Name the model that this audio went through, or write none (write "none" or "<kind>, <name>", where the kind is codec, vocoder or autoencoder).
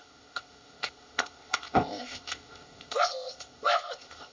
codec, ZipCodec